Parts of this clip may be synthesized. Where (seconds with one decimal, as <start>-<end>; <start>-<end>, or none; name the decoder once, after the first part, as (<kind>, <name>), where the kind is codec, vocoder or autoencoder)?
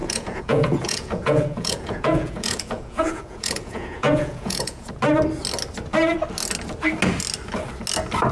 0.0-4.9 (vocoder, Vocos)